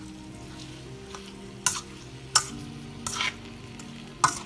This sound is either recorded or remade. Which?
recorded